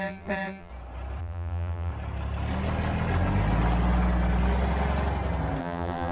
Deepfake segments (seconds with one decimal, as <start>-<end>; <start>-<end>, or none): 0.0-0.7; 1.2-1.9; 5.6-6.1